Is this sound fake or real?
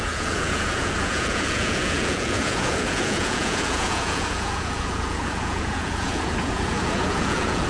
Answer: fake